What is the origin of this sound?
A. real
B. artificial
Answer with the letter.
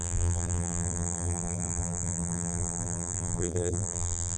B